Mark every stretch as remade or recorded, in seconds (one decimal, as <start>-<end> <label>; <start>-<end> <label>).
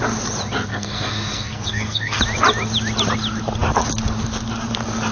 0.0-0.7 recorded; 0.7-2.2 remade; 2.2-5.1 recorded